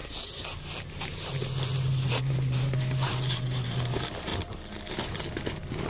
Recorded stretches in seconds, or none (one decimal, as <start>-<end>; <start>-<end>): 0.0-5.9